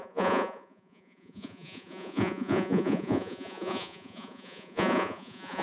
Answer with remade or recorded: remade